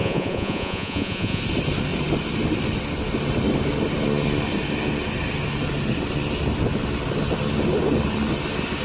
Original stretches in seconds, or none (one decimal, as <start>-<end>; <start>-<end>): 1.4-8.8

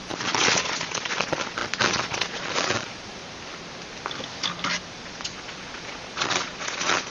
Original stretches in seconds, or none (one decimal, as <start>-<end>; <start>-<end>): 3.2-4.9

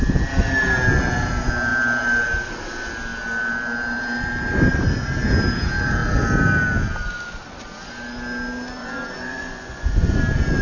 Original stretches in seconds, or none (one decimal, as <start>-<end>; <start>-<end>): 0.0-8.8; 10.2-10.6

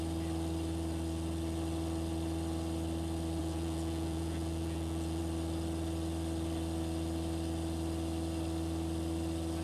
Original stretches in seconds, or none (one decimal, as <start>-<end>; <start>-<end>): 0.0-3.4; 5.2-9.6